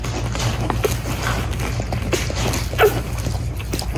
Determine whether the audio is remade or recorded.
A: recorded